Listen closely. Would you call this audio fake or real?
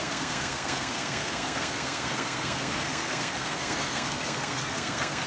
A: fake